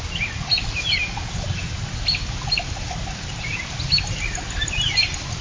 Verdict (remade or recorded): recorded